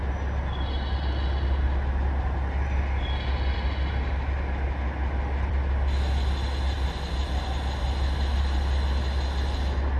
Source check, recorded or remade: recorded